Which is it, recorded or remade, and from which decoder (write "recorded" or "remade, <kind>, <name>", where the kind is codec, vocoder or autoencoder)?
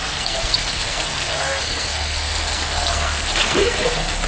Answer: remade, codec, SNAC